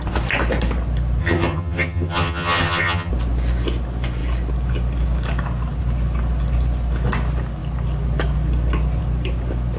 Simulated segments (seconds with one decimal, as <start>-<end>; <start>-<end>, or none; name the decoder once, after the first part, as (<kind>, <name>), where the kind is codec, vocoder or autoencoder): 1.2-3.1 (vocoder, HiFi-GAN)

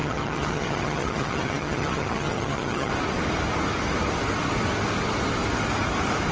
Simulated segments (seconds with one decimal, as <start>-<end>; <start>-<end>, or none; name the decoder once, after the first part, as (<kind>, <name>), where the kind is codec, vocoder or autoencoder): 0.0-2.9 (vocoder, HiFi-GAN)

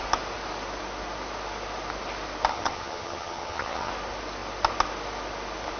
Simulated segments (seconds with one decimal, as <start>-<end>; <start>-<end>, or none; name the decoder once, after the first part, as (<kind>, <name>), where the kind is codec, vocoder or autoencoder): 2.5-3.9 (vocoder, HiFi-GAN)

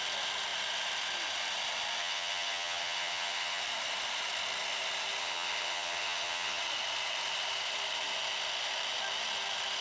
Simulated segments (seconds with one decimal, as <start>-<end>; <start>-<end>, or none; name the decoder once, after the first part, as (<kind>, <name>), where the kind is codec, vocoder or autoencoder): 2.0-3.6 (vocoder, HiFi-GAN); 5.2-6.6

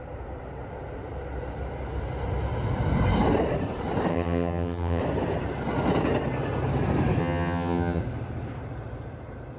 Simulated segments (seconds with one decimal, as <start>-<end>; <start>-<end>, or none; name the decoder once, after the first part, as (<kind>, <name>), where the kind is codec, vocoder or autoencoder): 4.1-5.0 (vocoder, HiFi-GAN); 7.2-8.0